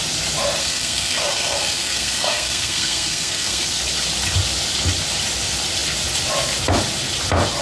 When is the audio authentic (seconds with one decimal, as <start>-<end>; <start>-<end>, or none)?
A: 0.0-0.6; 3.8-7.6